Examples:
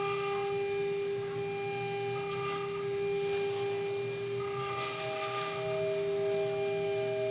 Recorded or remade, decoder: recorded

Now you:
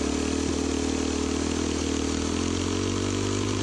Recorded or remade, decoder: recorded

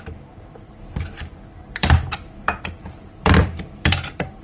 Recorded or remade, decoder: remade, vocoder, BigVGAN v2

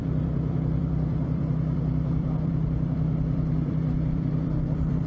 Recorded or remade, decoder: remade, vocoder, BigVGAN v2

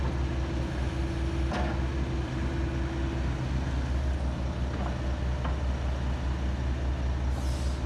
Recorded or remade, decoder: recorded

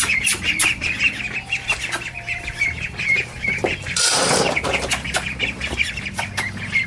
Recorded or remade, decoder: remade, vocoder, BigVGAN v2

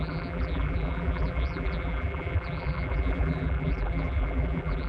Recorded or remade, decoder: remade, vocoder, BigVGAN v2